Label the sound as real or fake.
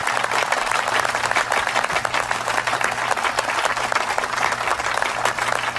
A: real